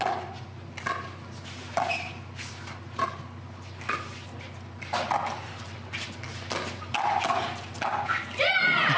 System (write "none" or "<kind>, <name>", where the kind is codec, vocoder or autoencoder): none